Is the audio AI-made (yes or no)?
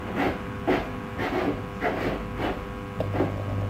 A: no